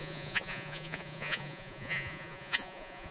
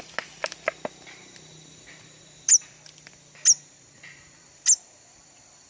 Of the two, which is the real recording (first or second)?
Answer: second